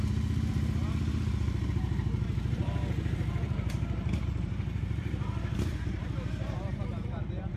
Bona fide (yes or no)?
no